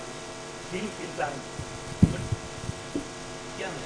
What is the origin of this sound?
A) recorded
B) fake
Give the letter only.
B